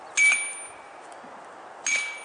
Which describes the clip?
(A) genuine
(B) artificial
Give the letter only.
A